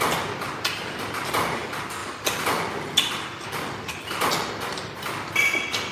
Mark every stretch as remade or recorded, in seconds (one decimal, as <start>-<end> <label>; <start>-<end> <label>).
0.0-5.9 recorded